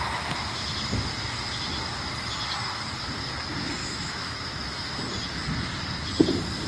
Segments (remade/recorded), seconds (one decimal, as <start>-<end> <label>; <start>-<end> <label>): 0.0-3.8 recorded; 3.8-5.0 remade; 5.0-6.7 recorded